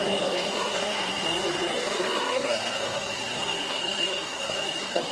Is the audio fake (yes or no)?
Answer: yes